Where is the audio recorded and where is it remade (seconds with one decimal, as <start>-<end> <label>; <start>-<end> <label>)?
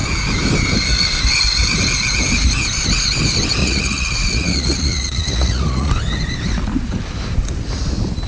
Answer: 0.0-3.6 recorded; 3.6-5.9 remade; 5.9-8.3 recorded